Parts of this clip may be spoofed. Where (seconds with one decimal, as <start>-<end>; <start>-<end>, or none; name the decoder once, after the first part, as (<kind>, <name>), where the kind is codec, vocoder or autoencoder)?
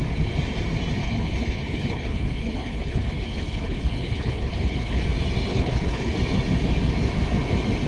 1.0-5.0 (codec, HILCodec); 5.5-6.1